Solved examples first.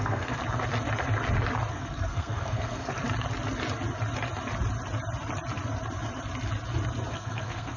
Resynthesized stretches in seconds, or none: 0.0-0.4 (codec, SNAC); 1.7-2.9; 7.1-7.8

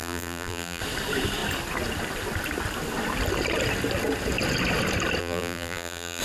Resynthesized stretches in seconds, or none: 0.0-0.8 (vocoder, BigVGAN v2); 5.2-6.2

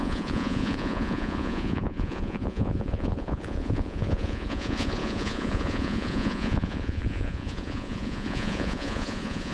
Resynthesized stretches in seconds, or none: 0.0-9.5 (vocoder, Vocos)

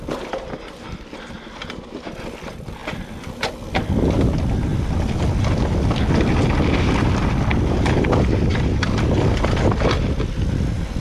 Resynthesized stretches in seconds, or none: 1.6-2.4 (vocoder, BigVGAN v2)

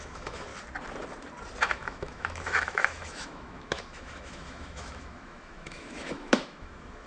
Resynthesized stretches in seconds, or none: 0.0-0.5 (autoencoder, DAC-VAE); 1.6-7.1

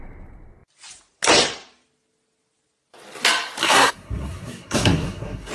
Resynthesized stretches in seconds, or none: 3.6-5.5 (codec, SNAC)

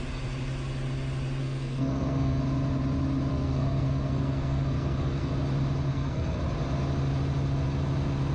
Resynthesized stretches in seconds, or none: 1.4-2.4 (codec, SNAC); 3.3-5.3; 5.9-6.4

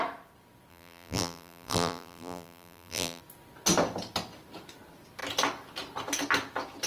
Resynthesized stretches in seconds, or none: 0.7-3.2 (vocoder, BigVGAN v2)